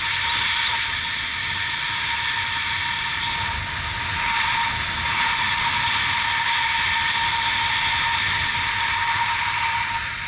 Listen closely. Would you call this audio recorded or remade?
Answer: recorded